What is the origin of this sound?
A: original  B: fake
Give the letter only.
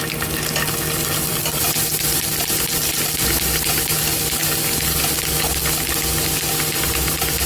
A